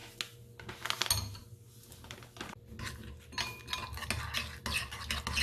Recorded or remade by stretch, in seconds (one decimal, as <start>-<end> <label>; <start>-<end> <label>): 0.0-5.4 recorded